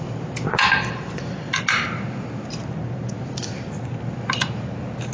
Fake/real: real